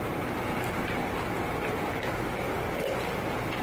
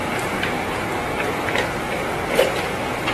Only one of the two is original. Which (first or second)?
first